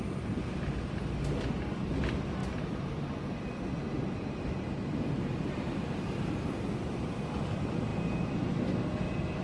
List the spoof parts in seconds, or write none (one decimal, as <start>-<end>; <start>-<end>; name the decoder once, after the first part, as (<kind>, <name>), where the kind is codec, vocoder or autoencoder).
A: 2.4-7.3 (vocoder, BigVGAN v2); 7.9-8.7